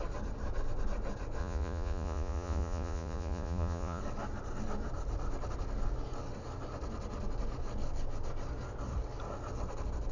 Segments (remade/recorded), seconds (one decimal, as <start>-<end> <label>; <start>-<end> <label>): 0.0-1.4 recorded; 1.4-4.0 remade; 4.0-10.1 recorded